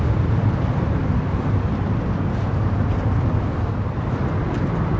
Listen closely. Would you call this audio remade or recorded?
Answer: recorded